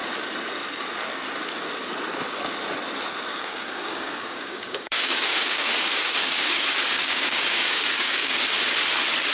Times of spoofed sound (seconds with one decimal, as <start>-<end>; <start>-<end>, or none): 3.3-8.4